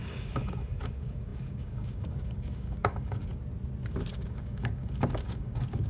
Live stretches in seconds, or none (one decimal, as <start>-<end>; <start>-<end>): 3.3-4.1